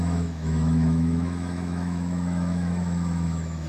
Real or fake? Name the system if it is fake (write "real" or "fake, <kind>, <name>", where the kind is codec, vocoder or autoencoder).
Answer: fake, autoencoder, DAC-VAE